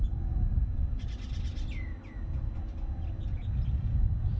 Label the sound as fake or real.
real